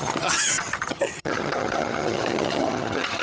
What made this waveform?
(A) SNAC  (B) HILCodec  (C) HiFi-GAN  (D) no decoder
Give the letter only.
C